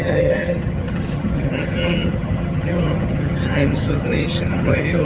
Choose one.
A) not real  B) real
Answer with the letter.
A